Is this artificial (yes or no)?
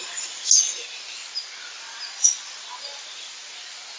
no